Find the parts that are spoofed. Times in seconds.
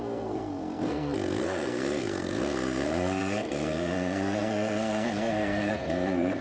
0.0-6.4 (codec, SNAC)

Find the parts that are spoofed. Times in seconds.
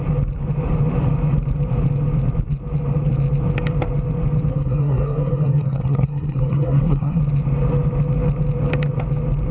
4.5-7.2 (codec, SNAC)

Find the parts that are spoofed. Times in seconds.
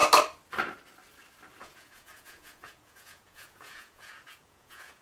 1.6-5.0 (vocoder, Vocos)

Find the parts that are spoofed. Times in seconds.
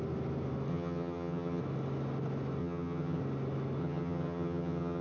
0.7-1.6 (vocoder, HiFi-GAN); 2.6-3.2; 3.8-5.0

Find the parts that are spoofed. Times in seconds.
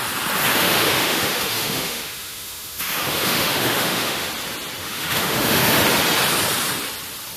0.5-4.3 (autoencoder, DAC-VAE); 4.8-5.8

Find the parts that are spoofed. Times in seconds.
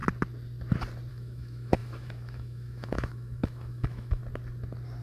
1.1-4.2 (autoencoder, DAC-VAE)